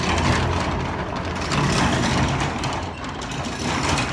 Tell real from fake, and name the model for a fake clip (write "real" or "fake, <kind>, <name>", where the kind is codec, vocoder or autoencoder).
real